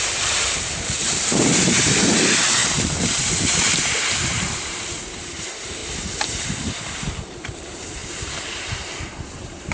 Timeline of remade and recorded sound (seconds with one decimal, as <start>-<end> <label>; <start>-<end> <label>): 0.0-5.8 remade; 5.8-6.4 recorded; 6.4-9.7 remade